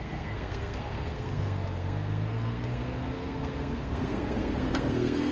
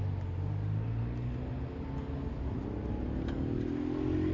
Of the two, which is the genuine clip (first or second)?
second